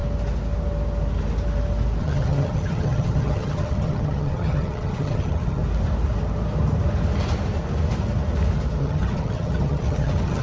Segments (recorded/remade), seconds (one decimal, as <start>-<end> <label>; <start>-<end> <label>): 0.0-2.0 recorded; 2.0-5.6 remade; 5.6-8.8 recorded; 8.8-10.4 remade